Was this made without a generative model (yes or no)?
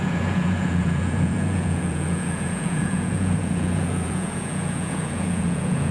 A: no